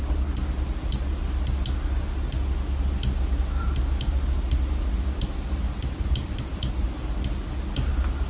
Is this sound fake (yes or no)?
no